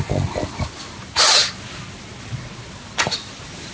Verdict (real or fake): real